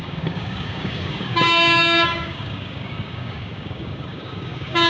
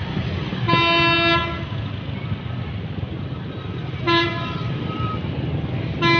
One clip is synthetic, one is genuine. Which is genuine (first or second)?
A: second